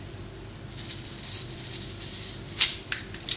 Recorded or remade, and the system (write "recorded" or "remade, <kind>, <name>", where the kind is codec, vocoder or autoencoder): recorded